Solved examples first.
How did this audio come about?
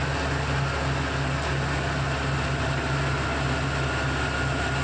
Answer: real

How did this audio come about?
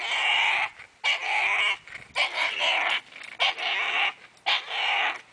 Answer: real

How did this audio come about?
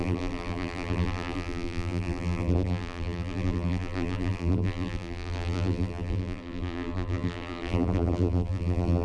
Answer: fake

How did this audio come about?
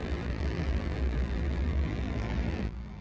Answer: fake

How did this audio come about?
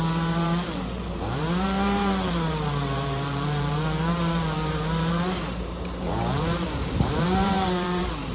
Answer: fake